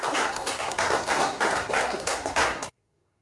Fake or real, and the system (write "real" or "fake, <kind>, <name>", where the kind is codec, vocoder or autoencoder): fake, codec, SNAC